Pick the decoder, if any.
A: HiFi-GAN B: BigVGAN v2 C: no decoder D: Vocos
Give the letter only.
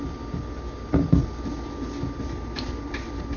C